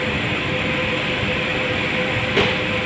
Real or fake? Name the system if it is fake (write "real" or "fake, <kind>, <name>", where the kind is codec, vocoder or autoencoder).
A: real